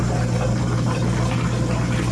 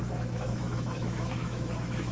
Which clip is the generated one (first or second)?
second